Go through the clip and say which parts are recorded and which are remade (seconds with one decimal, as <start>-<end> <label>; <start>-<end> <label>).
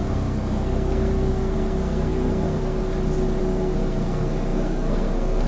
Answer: 0.0-2.8 remade; 2.8-3.4 recorded; 3.4-5.5 remade